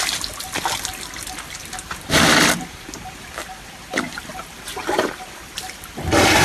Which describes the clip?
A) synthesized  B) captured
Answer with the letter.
B